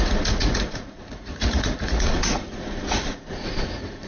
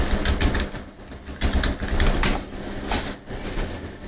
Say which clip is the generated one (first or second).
first